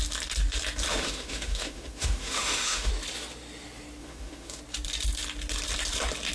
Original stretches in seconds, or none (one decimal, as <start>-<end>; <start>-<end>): 0.0-0.9; 2.9-4.0; 4.6-6.3